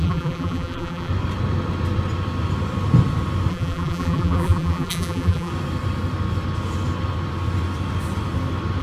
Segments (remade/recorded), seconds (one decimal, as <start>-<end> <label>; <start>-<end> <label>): 0.0-1.1 remade; 1.1-3.5 recorded; 3.5-5.5 remade; 5.5-8.8 recorded